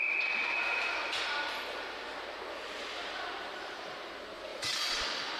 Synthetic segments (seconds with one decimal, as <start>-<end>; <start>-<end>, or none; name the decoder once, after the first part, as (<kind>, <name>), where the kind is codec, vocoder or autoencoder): 3.5-4.1 (vocoder, BigVGAN v2); 4.5-5.4